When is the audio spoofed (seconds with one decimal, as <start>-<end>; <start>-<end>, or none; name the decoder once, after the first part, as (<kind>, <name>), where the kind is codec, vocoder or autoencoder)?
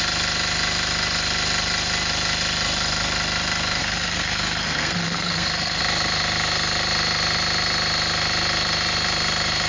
3.8-5.8 (codec, SNAC)